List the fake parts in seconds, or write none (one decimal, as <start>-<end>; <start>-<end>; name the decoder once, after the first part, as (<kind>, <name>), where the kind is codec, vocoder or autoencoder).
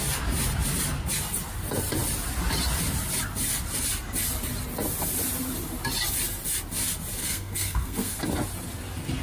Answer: 7.2-8.2 (codec, SNAC)